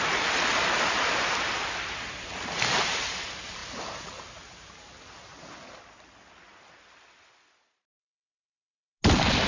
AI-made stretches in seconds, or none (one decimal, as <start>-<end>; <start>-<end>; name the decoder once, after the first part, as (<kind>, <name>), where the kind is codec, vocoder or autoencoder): none